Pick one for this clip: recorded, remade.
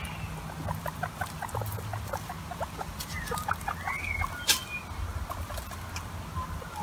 recorded